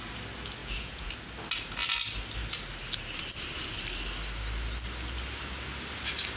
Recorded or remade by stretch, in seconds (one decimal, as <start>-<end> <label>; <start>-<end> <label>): 0.0-0.6 recorded; 0.6-1.1 remade; 1.1-6.4 recorded

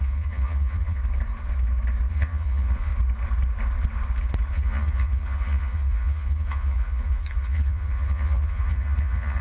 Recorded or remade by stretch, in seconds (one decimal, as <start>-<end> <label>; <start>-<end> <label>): 0.0-1.0 remade; 1.0-2.1 recorded; 2.1-2.9 remade; 2.9-4.5 recorded; 4.5-9.4 remade

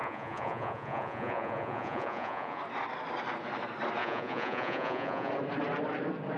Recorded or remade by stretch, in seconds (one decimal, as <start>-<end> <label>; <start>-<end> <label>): 0.0-2.6 remade; 2.6-4.0 recorded; 4.0-5.3 remade; 5.3-6.4 recorded

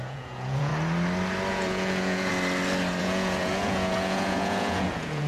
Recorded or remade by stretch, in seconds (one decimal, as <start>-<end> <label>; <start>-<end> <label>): 0.0-0.7 remade; 0.7-1.5 recorded; 1.5-2.3 remade; 2.3-3.0 recorded; 3.0-5.3 remade

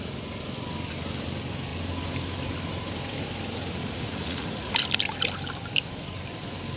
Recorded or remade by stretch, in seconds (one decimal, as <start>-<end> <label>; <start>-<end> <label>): 0.0-3.8 recorded; 3.8-4.7 remade; 4.7-6.8 recorded

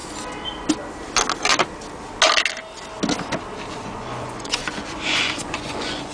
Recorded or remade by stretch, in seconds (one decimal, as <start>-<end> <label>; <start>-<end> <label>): 0.0-3.7 recorded; 3.7-6.1 remade

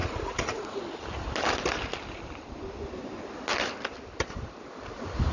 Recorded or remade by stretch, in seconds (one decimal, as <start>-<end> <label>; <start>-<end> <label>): 0.0-0.8 remade; 0.8-5.3 recorded